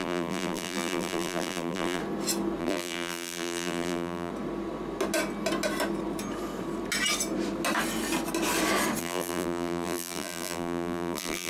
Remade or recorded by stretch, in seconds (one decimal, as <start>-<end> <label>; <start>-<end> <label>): 0.0-2.0 remade; 2.0-2.6 recorded; 2.6-4.3 remade; 4.3-9.0 recorded; 9.0-11.5 remade